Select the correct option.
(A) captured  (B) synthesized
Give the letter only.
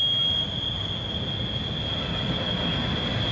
A